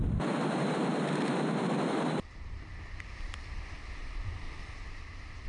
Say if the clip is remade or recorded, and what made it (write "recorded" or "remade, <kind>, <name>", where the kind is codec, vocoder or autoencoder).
recorded